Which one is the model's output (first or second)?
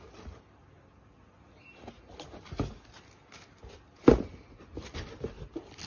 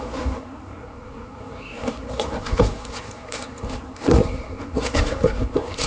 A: second